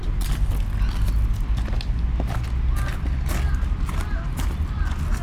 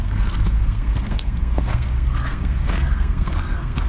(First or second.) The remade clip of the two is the second